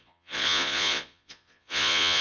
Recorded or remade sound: remade